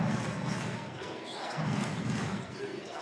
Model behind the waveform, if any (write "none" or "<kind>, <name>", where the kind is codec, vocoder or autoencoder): codec, SNAC